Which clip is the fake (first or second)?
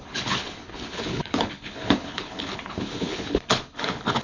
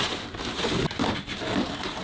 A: first